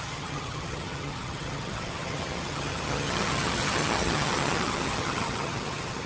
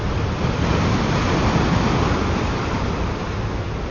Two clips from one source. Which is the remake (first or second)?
first